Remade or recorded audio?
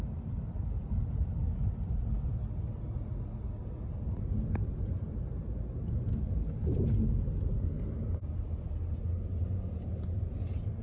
recorded